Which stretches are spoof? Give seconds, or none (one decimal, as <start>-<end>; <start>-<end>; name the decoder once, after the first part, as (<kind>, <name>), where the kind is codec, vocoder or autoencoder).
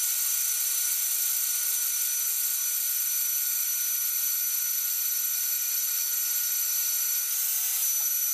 none